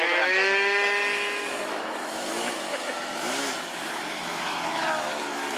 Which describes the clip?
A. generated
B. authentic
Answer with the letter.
A